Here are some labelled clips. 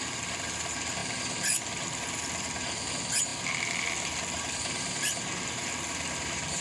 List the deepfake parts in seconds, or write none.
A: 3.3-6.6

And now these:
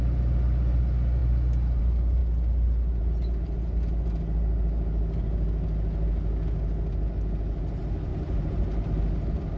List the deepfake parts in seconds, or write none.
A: 8.1-8.8

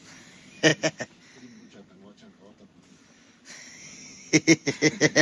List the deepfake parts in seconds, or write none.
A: 0.7-3.8

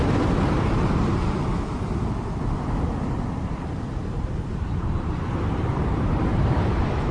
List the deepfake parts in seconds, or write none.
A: 0.0-1.5; 4.6-7.1

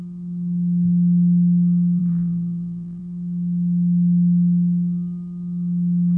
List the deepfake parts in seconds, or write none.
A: 2.0-3.0